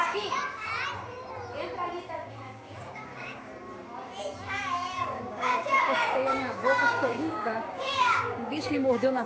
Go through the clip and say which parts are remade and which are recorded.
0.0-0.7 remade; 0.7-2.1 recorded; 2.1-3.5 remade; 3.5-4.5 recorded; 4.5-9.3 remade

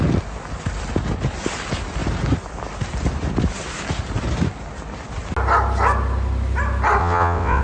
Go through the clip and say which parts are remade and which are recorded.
0.0-7.0 recorded; 7.0-7.6 remade

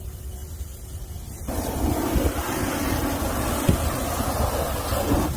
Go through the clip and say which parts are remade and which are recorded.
0.0-5.4 recorded

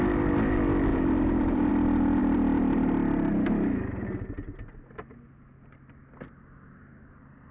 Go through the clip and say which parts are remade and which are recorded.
0.0-0.9 recorded; 0.9-1.7 remade; 1.7-7.5 recorded

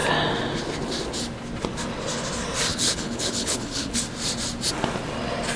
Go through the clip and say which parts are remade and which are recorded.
0.0-2.7 recorded; 2.7-4.0 remade; 4.0-5.6 recorded

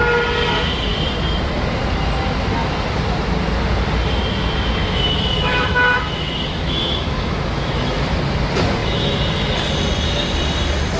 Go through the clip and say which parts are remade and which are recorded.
0.0-4.8 recorded; 4.8-8.0 remade; 8.0-8.8 recorded; 8.8-9.5 remade; 9.5-11.0 recorded

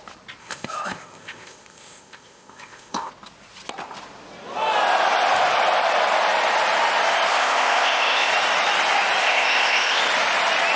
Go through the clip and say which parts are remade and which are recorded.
0.0-0.4 recorded; 0.4-3.1 remade; 3.1-7.3 recorded; 7.3-8.3 remade; 8.3-9.2 recorded; 9.2-10.0 remade; 10.0-10.8 recorded